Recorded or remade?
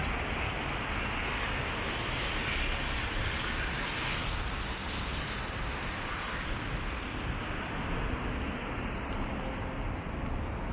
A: recorded